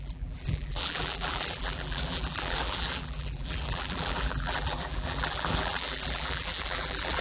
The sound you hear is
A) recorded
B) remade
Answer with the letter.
B